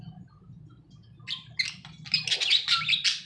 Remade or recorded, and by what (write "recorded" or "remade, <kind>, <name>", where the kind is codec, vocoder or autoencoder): recorded